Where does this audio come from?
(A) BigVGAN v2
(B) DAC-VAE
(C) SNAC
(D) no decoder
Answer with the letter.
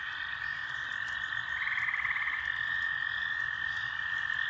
D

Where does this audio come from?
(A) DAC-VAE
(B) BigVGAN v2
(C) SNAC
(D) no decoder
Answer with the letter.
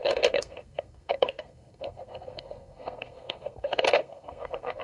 C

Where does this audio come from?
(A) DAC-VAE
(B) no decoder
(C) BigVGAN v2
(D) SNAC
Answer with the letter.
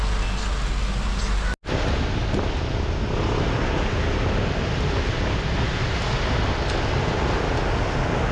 B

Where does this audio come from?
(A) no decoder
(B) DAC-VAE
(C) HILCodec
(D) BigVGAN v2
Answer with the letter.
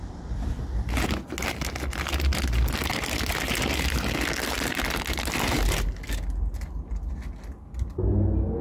A